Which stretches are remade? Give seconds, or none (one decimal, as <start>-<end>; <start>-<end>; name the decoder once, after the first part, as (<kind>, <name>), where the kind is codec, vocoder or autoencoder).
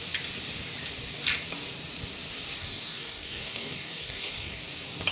2.6-4.6 (codec, DAC)